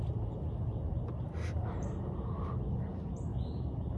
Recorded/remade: recorded